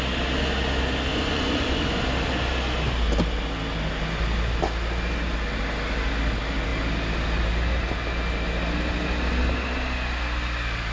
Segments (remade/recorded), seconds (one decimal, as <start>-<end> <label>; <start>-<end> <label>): 0.0-1.1 recorded; 1.1-2.0 remade; 2.0-10.9 recorded